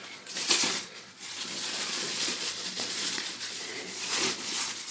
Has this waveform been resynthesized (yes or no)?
yes